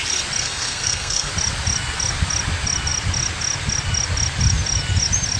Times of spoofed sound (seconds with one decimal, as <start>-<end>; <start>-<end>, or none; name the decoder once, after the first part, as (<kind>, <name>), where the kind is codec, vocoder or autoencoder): 0.4-1.3 (codec, SNAC)